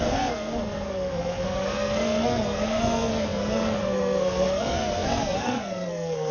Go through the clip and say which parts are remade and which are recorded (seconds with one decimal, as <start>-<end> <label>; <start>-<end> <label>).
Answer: 0.0-6.3 remade